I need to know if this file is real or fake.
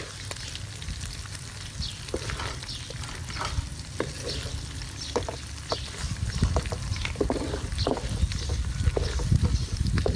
real